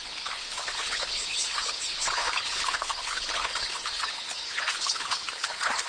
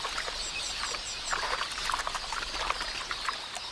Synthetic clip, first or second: first